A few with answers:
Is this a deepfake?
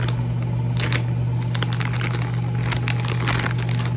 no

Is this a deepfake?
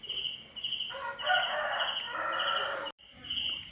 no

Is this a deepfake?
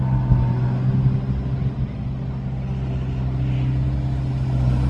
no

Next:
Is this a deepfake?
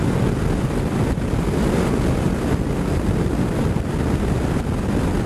no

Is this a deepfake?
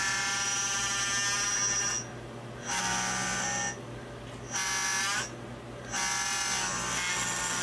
no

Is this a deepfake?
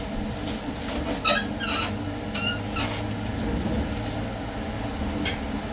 no